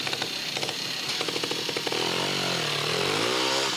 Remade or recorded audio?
recorded